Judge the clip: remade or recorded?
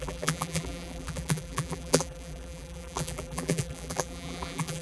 remade